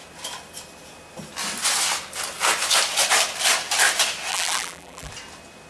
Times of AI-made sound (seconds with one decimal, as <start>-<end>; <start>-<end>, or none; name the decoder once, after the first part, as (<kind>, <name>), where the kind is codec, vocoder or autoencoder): 4.3-5.1 (vocoder, BigVGAN v2)